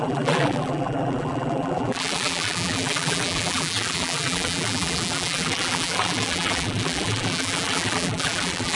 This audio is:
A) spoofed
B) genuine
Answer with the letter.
A